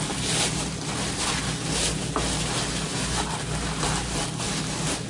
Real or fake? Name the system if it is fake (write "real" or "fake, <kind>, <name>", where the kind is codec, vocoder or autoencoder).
real